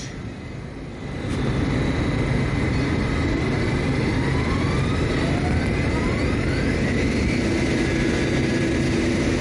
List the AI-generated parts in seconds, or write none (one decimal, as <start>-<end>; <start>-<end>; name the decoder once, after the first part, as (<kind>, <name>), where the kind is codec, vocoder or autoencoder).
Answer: none